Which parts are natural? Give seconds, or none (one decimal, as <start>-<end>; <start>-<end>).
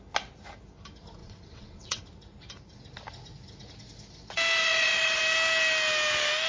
0.0-1.2; 2.0-4.6; 5.2-6.5